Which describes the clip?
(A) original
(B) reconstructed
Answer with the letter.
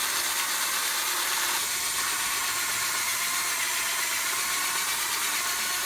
A